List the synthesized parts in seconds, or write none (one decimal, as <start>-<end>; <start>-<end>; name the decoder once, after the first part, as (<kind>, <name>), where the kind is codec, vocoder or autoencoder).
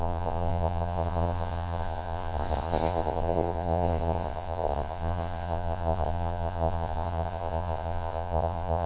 0.0-8.9 (vocoder, Vocos)